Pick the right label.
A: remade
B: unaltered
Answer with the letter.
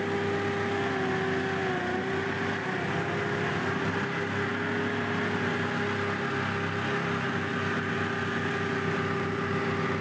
B